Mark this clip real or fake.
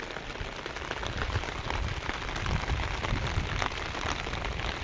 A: real